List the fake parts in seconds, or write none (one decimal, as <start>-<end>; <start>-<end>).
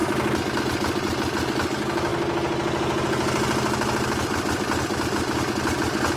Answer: none